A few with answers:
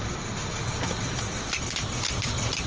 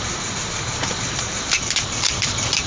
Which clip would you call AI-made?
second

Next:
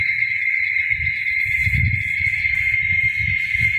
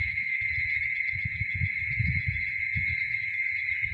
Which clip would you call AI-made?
second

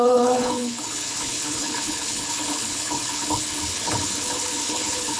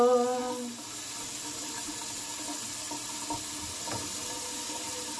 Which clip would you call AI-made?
first